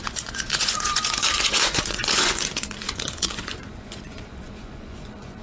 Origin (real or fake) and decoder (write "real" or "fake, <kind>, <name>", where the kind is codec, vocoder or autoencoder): fake, vocoder, Vocos